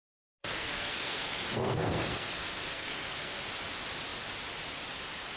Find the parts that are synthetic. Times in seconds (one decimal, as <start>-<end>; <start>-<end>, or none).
0.4-3.4